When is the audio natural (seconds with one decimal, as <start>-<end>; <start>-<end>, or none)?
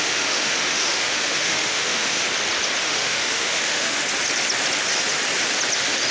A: 2.2-2.8; 4.0-6.1